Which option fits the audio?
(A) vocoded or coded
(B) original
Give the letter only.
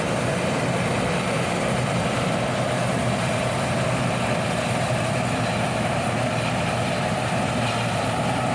A